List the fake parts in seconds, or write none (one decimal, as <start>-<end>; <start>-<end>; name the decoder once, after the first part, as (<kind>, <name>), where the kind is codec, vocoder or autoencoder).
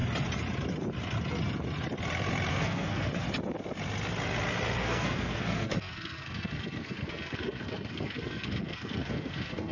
2.5-3.1 (codec, SNAC); 4.8-9.7